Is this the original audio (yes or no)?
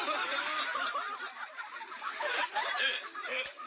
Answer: yes